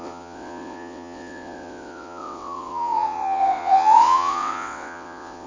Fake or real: fake